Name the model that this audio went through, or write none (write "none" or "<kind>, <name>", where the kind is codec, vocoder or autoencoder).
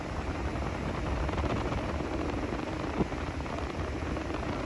none